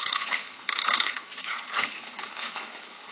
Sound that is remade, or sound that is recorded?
remade